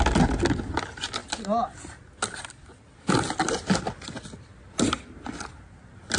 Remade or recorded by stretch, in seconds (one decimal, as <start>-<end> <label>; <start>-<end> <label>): 0.0-6.2 recorded